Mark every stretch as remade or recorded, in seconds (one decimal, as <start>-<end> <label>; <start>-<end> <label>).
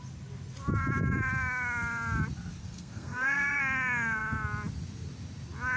0.0-2.6 recorded; 2.6-3.6 remade; 3.6-5.8 recorded